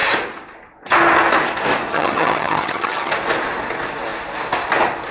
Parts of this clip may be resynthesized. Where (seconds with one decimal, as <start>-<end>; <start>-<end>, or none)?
1.9-3.1